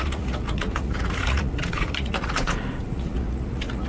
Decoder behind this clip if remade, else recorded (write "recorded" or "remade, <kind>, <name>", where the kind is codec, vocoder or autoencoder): remade, vocoder, Vocos